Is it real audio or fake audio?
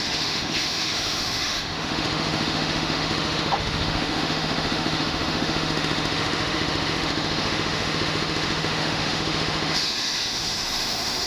fake